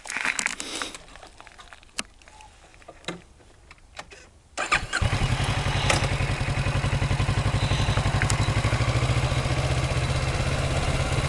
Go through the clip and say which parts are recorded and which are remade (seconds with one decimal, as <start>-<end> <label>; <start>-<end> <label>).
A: 0.0-2.7 recorded; 2.7-5.3 remade; 5.3-11.3 recorded